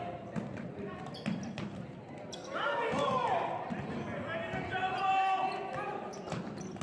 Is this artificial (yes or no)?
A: no